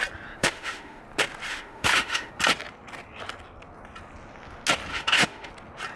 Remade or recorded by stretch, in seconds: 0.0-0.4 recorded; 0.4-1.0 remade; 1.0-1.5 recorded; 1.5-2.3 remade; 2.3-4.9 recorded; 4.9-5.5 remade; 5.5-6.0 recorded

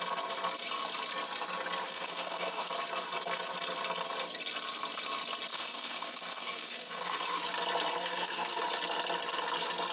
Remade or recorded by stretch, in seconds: 0.0-1.9 recorded; 1.9-2.7 remade; 2.7-5.5 recorded; 5.5-7.4 remade; 7.4-8.0 recorded; 8.0-8.6 remade; 8.6-9.9 recorded

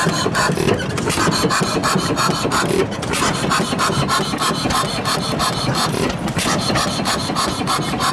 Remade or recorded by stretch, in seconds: 0.0-8.1 recorded

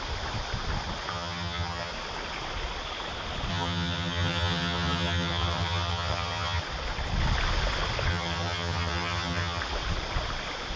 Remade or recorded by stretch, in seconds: 0.0-1.1 recorded; 1.1-1.9 remade; 1.9-3.5 recorded; 3.5-6.6 remade; 6.6-8.1 recorded; 8.1-9.6 remade; 9.6-10.8 recorded

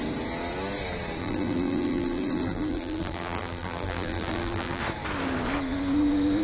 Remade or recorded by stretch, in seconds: 0.0-1.2 recorded; 1.2-4.8 remade; 4.8-6.4 recorded

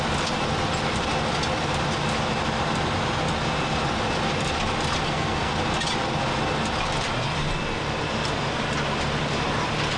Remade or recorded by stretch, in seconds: 0.0-5.0 recorded; 5.0-5.5 remade; 5.5-10.0 recorded

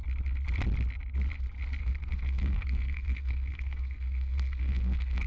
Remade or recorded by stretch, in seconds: 0.0-1.8 recorded; 1.8-5.3 remade

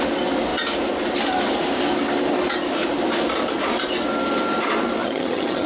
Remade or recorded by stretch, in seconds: 0.0-5.0 recorded; 5.0-5.7 remade